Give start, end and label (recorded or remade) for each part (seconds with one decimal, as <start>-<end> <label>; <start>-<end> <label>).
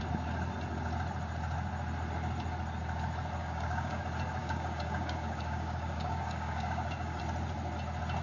0.0-3.4 recorded; 3.4-4.0 remade; 4.0-4.4 recorded; 4.4-7.2 remade; 7.2-8.2 recorded